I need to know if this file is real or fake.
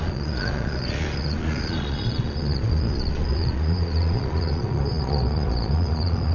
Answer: fake